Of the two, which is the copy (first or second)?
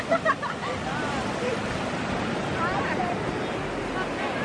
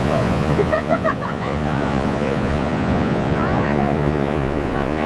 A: second